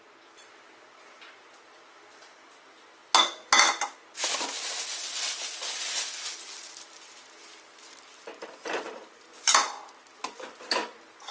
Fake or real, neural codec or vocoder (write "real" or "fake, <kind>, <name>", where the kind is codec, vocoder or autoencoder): fake, vocoder, BigVGAN v2